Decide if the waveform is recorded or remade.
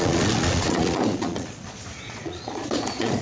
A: remade